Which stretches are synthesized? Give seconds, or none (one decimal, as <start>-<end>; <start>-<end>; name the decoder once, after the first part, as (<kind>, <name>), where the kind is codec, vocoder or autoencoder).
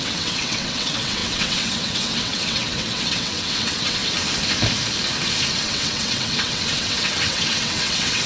0.0-4.0 (vocoder, WaveNeXt); 5.5-8.3